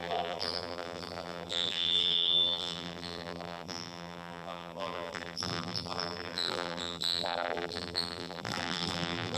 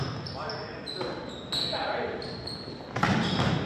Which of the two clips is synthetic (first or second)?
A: first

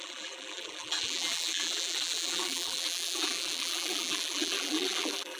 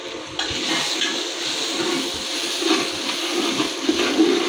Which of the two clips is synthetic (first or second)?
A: first